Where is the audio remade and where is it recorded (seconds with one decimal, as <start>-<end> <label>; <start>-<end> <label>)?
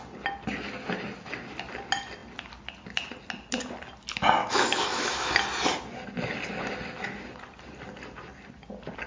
0.0-4.4 recorded; 4.4-5.3 remade; 5.3-9.1 recorded